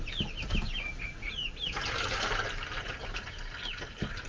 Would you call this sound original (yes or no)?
yes